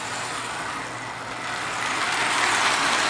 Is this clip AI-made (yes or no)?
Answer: no